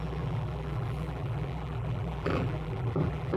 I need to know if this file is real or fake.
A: fake